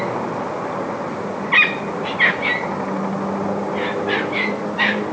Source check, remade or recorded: recorded